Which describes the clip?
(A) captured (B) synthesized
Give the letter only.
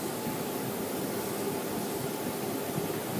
A